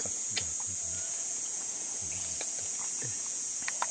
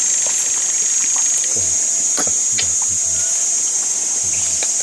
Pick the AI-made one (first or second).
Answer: first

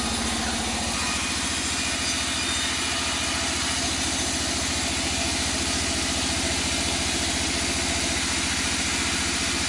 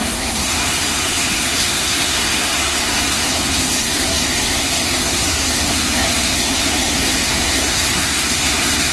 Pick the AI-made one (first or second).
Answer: second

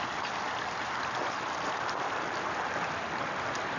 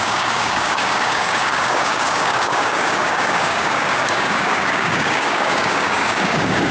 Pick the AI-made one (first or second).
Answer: second